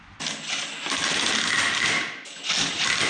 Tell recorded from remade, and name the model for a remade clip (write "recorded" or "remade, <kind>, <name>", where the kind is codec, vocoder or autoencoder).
recorded